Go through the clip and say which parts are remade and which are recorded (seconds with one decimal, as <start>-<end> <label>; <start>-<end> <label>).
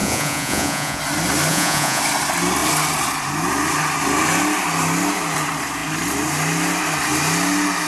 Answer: 0.0-1.0 remade; 1.0-1.5 recorded; 1.5-2.0 remade; 2.0-7.9 recorded